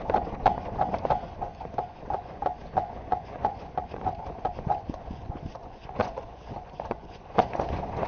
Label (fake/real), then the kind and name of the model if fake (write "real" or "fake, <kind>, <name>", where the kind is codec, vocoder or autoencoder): fake, vocoder, Vocos